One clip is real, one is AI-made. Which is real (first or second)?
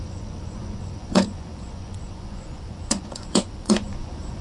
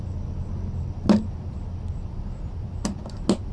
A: second